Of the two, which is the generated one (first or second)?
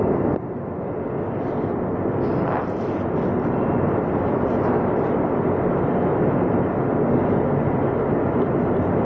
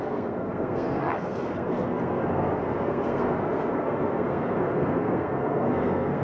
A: second